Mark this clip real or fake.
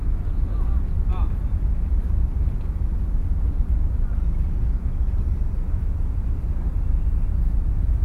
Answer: real